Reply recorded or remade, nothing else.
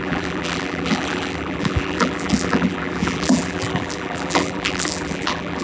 remade